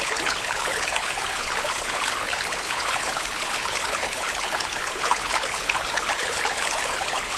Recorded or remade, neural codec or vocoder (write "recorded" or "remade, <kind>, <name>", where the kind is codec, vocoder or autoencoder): remade, codec, HILCodec